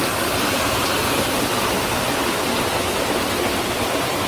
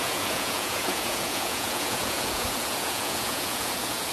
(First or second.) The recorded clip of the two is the first